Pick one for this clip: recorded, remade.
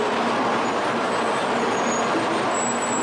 recorded